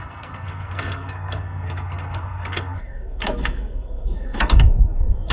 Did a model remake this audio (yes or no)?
yes